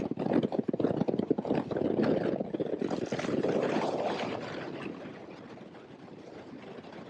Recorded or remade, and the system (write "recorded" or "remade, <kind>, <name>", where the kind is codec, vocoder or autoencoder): recorded